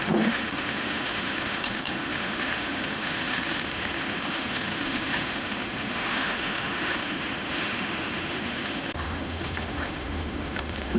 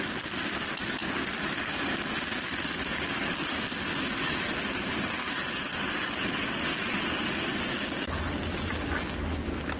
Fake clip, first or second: first